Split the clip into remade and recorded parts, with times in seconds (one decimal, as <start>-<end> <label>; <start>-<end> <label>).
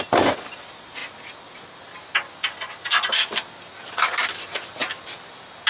0.0-1.0 remade; 1.0-3.1 recorded; 3.1-4.8 remade; 4.8-5.7 recorded